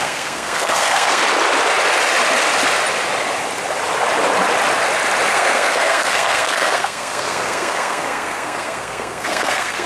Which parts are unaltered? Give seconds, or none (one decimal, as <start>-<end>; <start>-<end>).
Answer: 1.2-5.3